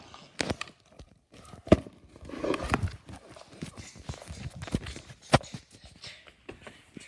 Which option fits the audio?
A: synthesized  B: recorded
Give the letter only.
B